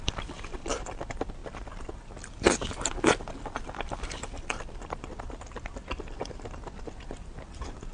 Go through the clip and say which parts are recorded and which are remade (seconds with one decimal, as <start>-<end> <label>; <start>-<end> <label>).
0.0-7.9 recorded